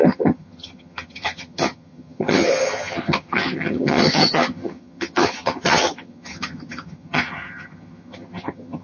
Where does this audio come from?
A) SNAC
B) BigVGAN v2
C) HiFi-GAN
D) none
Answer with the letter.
C